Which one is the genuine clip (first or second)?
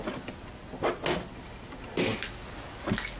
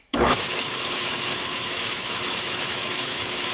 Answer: first